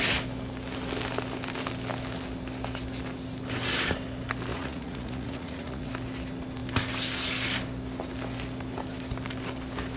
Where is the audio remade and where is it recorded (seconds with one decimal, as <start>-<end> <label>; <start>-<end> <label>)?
0.0-4.5 recorded; 4.5-5.9 remade; 5.9-10.0 recorded